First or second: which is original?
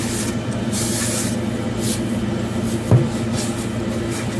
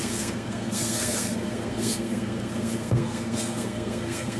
first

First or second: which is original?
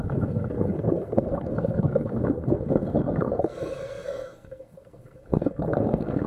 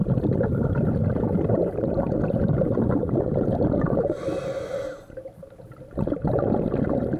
second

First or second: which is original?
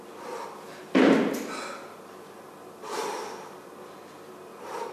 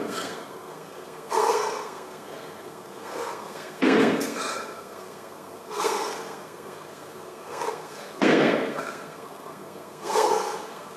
first